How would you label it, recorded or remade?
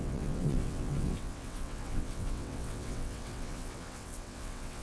remade